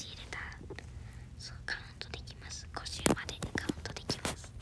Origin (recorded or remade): recorded